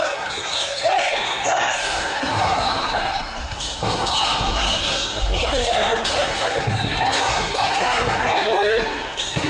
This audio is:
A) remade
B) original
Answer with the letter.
A